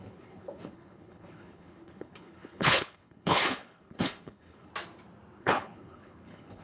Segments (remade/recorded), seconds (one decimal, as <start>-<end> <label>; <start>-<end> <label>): 0.0-4.7 remade; 4.7-5.4 recorded; 5.4-6.6 remade